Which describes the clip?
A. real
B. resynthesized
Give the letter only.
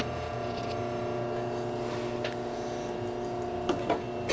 A